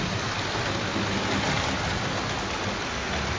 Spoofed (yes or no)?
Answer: no